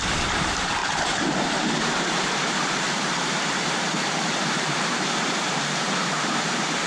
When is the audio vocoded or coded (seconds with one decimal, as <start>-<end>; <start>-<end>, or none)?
0.0-0.8; 1.4-6.9